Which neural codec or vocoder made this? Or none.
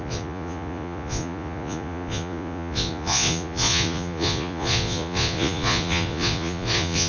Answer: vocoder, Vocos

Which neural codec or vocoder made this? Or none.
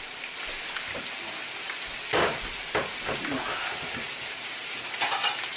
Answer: none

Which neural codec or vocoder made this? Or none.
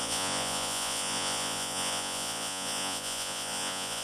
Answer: vocoder, Vocos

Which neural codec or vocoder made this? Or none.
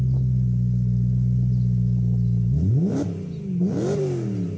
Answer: none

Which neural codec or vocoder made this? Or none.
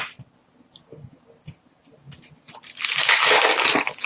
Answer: none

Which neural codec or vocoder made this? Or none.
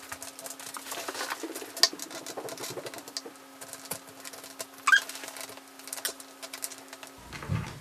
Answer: none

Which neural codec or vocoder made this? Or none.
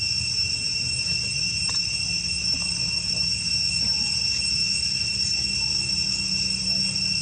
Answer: none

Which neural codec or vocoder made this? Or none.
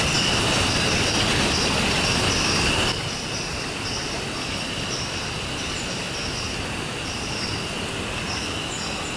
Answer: none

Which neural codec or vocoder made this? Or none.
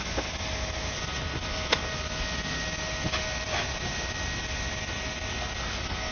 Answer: none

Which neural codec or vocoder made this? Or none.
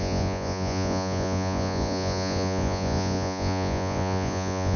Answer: vocoder, Vocos